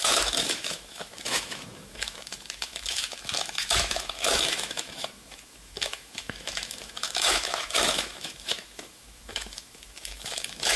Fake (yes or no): yes